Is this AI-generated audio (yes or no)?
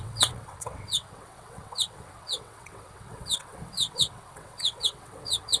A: yes